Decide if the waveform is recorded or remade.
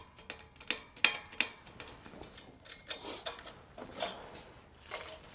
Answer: recorded